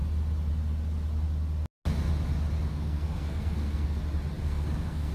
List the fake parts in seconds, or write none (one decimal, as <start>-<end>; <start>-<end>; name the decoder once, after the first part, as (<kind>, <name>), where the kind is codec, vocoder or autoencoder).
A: 2.7-4.0 (codec, SNAC); 4.4-5.1